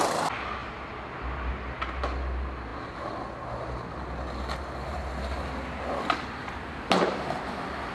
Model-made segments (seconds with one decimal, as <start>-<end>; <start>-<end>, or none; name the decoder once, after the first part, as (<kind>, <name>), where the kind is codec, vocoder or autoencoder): none